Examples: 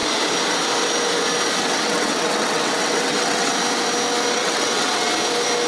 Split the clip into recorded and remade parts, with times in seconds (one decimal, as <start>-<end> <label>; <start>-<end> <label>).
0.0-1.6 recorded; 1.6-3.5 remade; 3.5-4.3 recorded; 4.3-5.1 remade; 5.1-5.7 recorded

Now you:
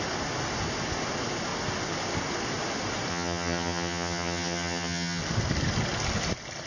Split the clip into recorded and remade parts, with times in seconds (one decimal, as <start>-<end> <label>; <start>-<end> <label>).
0.0-3.1 recorded; 3.1-5.2 remade; 5.2-6.7 recorded

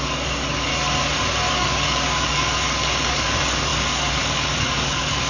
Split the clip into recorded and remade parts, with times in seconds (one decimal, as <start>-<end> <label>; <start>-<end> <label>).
0.0-0.7 remade; 0.7-1.5 recorded; 1.5-5.3 remade

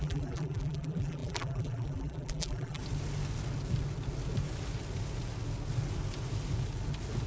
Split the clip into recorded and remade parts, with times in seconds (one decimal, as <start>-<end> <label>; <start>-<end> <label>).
0.0-2.8 remade; 2.8-7.3 recorded

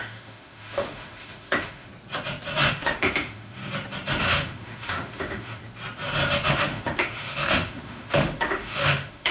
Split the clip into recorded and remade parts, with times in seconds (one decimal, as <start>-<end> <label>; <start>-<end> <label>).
0.0-1.9 remade; 1.9-2.7 recorded; 2.7-3.6 remade; 3.6-4.2 recorded; 4.2-5.6 remade; 5.6-6.5 recorded; 6.5-9.3 remade